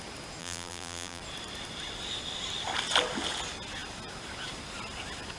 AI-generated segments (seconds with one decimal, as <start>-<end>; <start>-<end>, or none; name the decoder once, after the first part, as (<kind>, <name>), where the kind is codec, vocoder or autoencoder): 0.4-1.2 (vocoder, BigVGAN v2)